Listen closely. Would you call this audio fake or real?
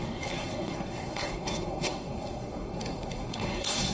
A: fake